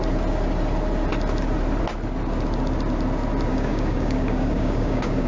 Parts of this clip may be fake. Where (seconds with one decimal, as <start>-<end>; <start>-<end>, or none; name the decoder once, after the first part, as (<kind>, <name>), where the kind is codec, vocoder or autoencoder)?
3.5-5.3 (codec, DAC)